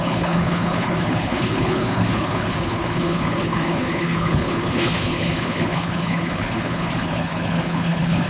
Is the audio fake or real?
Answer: fake